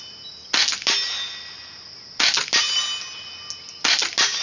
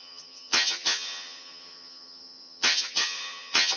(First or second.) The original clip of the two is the first